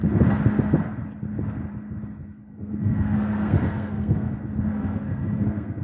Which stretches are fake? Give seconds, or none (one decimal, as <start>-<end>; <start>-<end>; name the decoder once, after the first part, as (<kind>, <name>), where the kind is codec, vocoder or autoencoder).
2.5-4.3 (codec, SNAC); 4.7-5.8